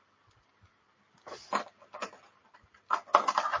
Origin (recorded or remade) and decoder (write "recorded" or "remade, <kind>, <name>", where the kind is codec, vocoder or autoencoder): recorded